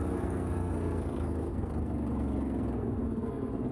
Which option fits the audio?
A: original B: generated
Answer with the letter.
B